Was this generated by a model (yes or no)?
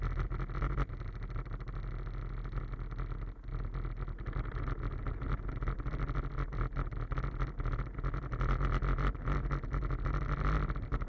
no